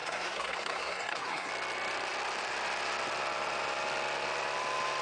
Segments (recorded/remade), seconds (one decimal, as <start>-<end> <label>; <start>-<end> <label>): 0.0-1.5 remade; 1.5-5.0 recorded